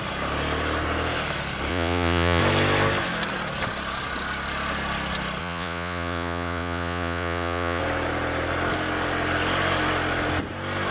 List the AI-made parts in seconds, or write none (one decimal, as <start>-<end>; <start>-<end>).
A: 1.7-2.4; 5.4-7.8